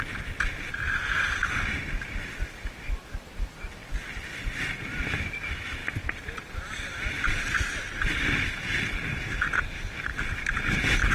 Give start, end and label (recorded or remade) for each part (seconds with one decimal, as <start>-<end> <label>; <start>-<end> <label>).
0.0-11.1 remade